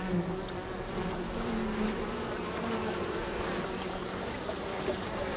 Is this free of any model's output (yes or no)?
yes